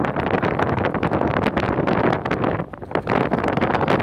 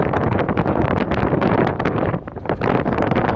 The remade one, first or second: second